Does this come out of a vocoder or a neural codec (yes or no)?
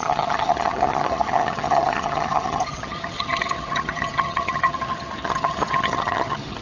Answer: yes